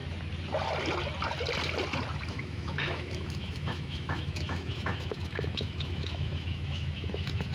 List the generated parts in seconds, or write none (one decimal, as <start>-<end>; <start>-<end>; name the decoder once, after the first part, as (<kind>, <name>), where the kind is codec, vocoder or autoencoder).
2.3-7.5 (autoencoder, DAC-VAE)